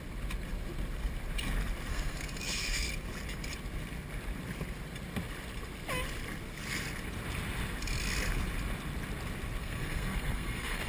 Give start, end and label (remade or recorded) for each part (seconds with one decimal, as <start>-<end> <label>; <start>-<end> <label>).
0.0-1.9 recorded; 1.9-2.9 remade; 2.9-9.6 recorded; 9.6-10.9 remade